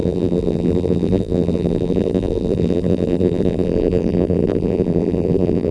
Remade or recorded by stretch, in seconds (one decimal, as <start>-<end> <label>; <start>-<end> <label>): 0.0-5.7 remade